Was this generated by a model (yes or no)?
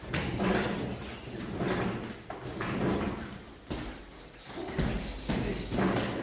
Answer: no